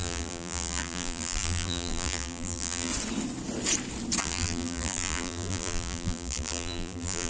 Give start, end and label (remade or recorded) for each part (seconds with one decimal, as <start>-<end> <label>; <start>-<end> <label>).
0.0-2.9 remade; 2.9-4.2 recorded; 4.2-7.3 remade